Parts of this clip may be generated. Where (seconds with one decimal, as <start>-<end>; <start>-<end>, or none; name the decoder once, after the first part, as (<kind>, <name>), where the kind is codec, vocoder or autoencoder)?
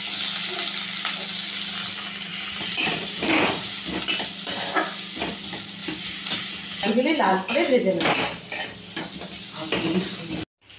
2.3-3.4 (vocoder, BigVGAN v2); 5.8-6.5